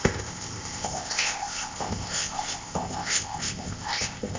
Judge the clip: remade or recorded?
remade